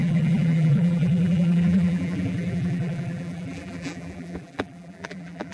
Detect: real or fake fake